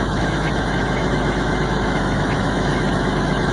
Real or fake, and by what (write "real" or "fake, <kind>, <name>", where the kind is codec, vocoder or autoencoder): fake, autoencoder, DAC-VAE